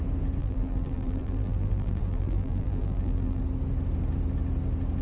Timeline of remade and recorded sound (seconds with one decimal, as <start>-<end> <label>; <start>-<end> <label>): 0.0-0.4 recorded; 0.4-3.4 remade; 3.4-5.0 recorded